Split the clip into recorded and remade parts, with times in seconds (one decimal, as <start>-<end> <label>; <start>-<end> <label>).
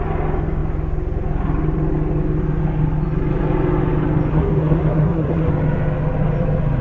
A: 0.0-4.3 recorded; 4.3-5.5 remade; 5.5-6.8 recorded